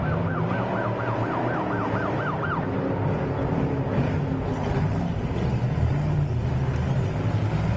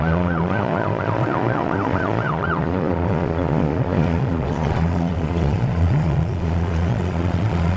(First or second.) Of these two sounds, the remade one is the second